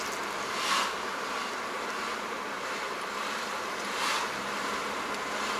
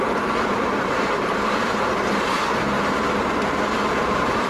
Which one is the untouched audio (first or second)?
first